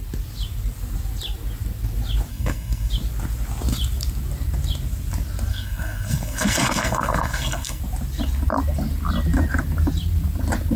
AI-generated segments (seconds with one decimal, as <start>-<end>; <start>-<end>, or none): 2.3-2.9; 5.5-7.8